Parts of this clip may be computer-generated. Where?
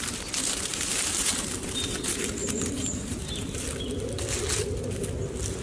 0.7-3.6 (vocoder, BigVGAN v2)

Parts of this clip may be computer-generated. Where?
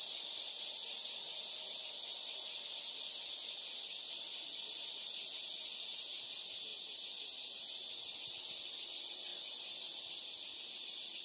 none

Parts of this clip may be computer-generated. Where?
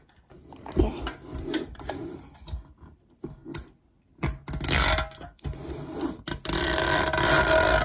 none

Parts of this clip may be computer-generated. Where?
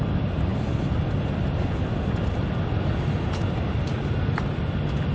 none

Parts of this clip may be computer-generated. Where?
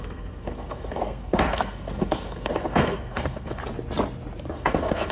0.0-3.6 (codec, SNAC); 4.5-5.1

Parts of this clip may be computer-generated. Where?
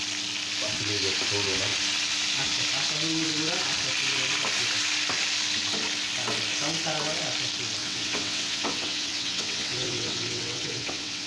7.8-11.3 (vocoder, WaveNeXt)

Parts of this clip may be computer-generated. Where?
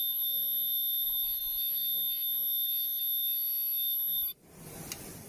none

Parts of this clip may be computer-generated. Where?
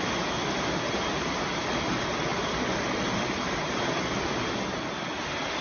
none